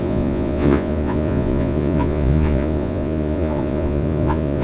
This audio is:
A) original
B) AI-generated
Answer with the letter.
B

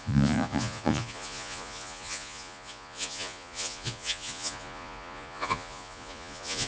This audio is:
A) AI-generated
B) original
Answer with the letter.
A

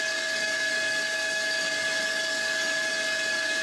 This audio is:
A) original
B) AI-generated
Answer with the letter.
B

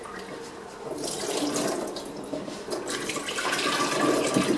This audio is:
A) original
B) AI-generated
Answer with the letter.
A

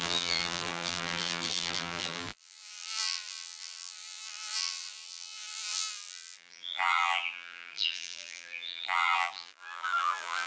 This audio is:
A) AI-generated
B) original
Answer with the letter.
A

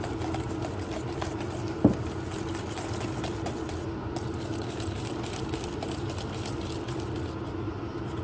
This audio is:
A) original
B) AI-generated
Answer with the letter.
A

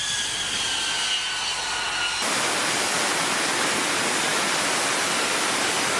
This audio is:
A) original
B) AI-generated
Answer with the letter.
A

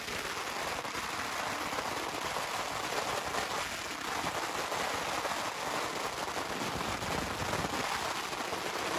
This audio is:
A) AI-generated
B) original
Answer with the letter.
B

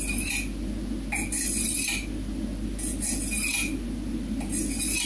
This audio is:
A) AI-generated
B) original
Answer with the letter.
B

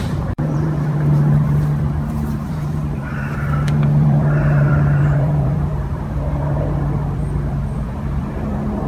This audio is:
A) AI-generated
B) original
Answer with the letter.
A